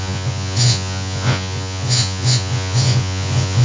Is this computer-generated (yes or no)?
yes